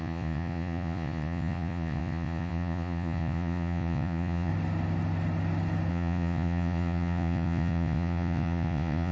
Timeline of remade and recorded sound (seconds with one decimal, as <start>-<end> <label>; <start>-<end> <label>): 0.0-4.5 remade; 4.5-5.9 recorded; 5.9-9.1 remade

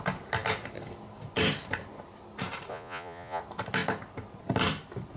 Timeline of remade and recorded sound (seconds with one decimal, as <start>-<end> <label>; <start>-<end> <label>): 0.0-2.7 recorded; 2.7-3.4 remade; 3.4-5.2 recorded

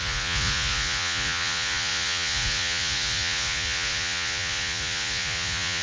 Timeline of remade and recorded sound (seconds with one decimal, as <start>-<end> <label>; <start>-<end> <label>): 0.0-5.8 remade

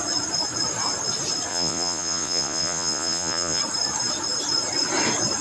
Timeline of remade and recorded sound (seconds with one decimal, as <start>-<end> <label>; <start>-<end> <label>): 0.0-1.5 recorded; 1.5-3.6 remade; 3.6-5.4 recorded

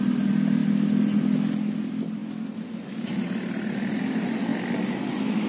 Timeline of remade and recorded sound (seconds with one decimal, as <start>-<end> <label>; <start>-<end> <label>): 0.0-5.5 recorded